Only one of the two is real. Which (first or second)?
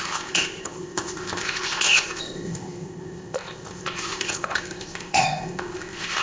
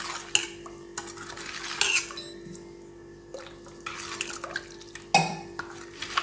second